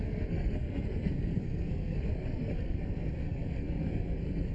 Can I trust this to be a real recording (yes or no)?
no